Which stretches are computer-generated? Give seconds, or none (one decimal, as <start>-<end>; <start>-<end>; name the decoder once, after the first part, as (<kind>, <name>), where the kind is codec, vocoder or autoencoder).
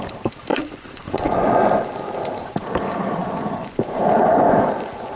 0.5-2.1 (vocoder, Vocos); 3.2-5.2